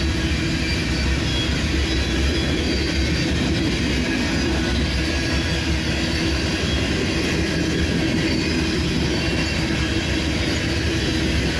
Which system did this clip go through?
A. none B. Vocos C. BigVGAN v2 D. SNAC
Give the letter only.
A